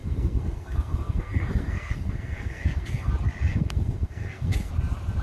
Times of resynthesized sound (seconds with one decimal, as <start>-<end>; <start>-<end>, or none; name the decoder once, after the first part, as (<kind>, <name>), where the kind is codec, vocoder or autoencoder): 0.0-3.1 (codec, SNAC); 3.5-4.7